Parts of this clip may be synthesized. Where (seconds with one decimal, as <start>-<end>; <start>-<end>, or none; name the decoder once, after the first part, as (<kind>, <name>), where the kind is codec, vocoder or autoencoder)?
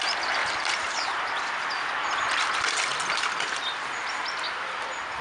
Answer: 0.4-1.4 (vocoder, BigVGAN v2)